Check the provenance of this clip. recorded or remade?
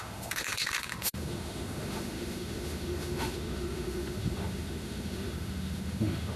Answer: remade